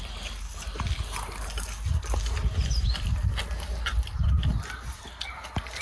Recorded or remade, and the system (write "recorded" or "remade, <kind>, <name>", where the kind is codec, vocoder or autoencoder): recorded